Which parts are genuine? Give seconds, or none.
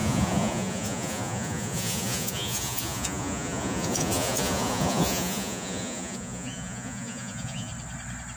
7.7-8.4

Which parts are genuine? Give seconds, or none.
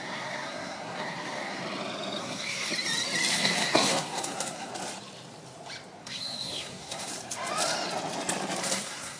1.6-2.2; 2.7-3.3; 4.7-6.0; 7.1-8.6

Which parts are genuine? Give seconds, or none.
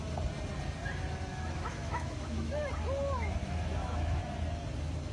0.0-1.3; 2.7-3.4; 4.2-5.1